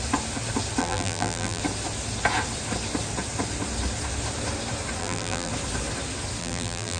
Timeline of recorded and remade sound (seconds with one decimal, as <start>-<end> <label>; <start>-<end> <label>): 0.0-0.8 recorded; 0.8-1.6 remade; 1.6-5.0 recorded; 5.0-5.5 remade; 5.5-6.4 recorded; 6.4-7.0 remade